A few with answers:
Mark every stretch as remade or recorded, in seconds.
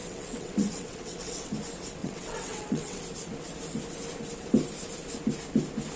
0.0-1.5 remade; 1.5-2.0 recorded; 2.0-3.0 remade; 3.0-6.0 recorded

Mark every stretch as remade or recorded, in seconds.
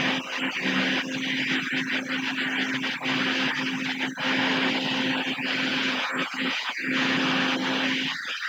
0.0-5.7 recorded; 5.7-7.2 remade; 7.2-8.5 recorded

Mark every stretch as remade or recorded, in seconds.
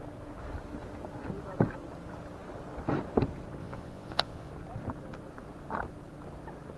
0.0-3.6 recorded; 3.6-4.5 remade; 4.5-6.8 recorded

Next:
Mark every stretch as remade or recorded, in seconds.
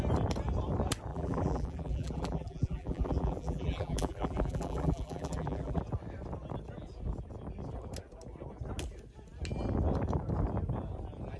0.0-1.1 recorded; 1.1-5.8 remade; 5.8-11.4 recorded